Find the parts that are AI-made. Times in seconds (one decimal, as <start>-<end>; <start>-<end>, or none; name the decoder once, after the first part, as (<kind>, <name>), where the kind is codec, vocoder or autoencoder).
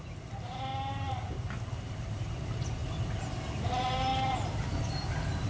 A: 0.0-2.8 (vocoder, BigVGAN v2); 3.6-4.1; 4.8-5.5